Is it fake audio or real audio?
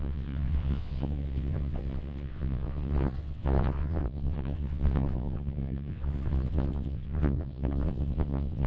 fake